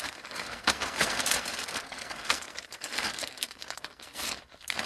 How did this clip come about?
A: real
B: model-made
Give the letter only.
B